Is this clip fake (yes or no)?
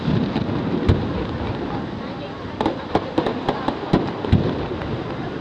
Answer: no